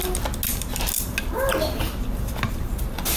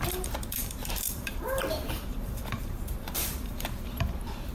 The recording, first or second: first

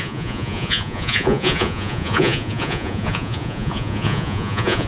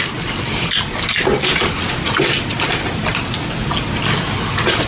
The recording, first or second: second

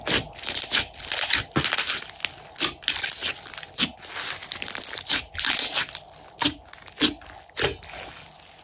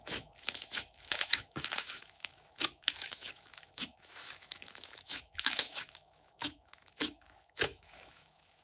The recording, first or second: first